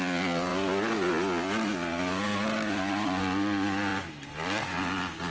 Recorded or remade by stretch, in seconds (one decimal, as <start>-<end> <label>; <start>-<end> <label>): 0.0-5.3 recorded